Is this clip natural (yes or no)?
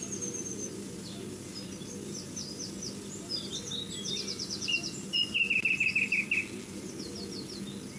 yes